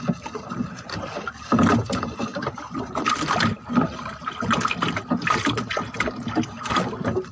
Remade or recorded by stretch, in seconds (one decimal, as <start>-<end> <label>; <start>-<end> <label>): 0.0-7.3 recorded